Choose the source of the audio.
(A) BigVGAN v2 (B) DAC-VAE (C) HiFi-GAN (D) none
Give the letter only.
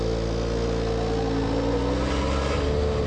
D